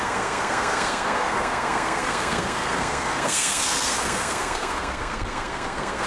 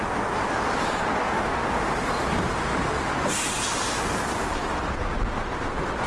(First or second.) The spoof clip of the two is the first